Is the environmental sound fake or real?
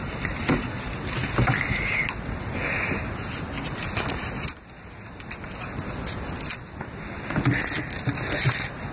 real